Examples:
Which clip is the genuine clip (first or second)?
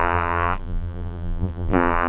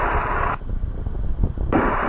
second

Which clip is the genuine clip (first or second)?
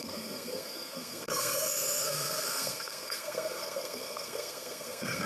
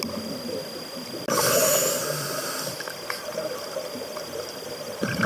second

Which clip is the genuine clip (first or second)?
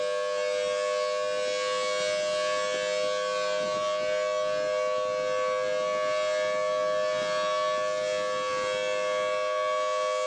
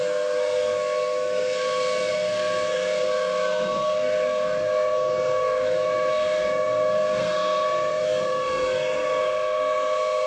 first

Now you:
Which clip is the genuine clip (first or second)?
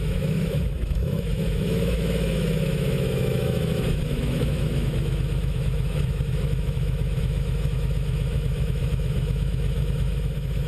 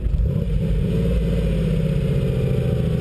second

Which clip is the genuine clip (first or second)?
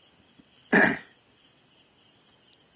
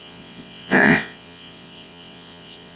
first